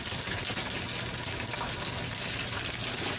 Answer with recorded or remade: recorded